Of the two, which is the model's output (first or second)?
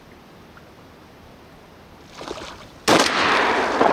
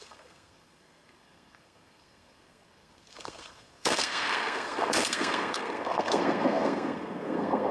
second